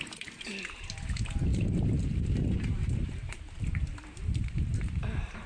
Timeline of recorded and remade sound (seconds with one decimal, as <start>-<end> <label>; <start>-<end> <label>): 0.0-1.5 recorded; 1.5-4.8 remade; 4.8-5.5 recorded